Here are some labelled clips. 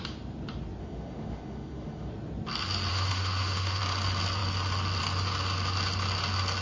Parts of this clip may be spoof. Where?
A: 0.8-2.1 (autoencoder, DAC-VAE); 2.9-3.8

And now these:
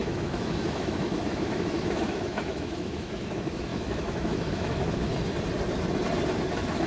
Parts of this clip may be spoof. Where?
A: 0.0-5.1 (autoencoder, DAC-VAE); 6.5-6.9

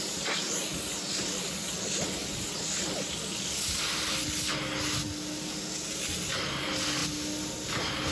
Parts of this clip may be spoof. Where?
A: none